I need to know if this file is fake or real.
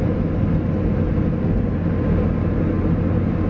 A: real